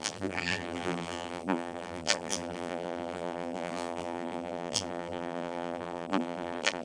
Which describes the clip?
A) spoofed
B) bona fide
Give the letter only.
A